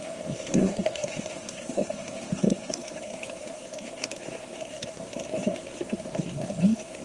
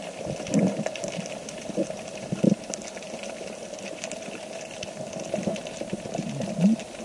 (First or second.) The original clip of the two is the second